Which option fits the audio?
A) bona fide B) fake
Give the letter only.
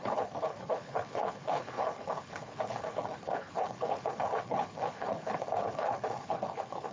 B